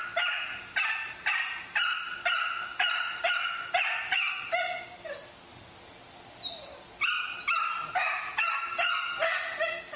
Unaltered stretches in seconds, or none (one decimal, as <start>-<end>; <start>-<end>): 0.0-2.7; 3.3-10.0